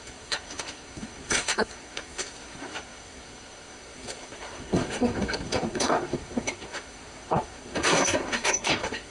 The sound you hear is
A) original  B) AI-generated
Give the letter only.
B